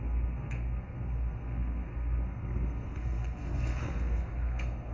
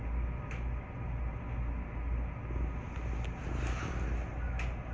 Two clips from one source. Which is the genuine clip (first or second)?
second